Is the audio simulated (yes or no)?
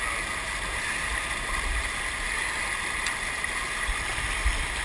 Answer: no